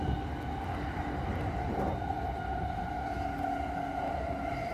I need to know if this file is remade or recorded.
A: recorded